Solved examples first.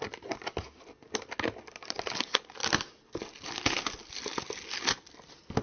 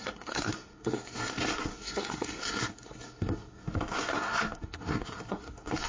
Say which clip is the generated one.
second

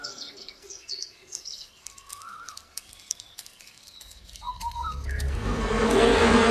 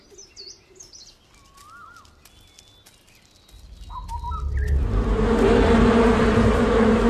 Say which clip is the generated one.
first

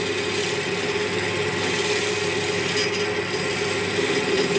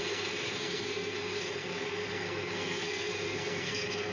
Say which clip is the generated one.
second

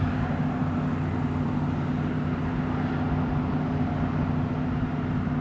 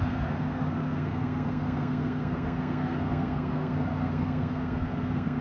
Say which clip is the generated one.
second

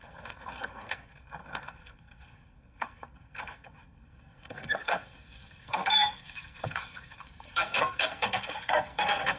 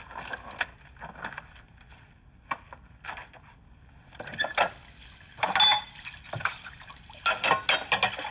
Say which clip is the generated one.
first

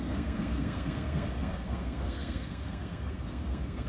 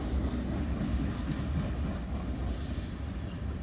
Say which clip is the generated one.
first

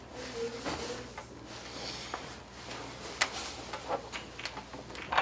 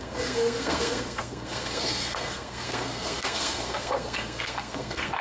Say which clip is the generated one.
second